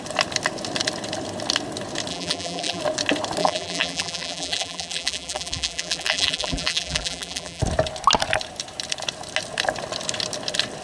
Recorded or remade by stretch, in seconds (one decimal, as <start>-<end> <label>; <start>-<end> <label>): 0.0-2.1 recorded; 2.1-2.8 remade; 2.8-3.4 recorded; 3.4-7.6 remade; 7.6-10.8 recorded